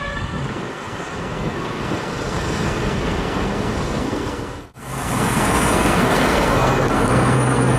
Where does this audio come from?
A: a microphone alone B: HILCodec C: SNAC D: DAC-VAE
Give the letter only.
C